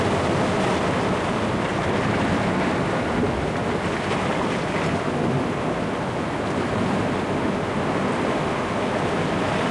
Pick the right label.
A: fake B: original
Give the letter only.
B